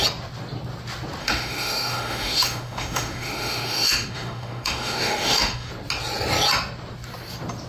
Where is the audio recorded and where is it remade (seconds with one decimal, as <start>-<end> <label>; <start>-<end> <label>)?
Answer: 0.0-1.2 recorded; 1.2-5.7 remade; 5.7-7.7 recorded